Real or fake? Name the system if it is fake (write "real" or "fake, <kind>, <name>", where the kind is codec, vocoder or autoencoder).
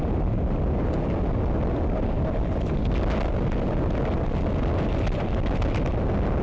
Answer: real